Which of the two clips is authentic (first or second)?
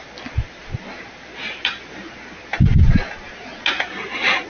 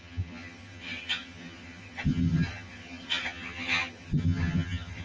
first